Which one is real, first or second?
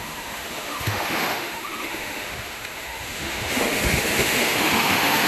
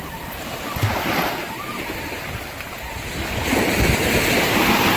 second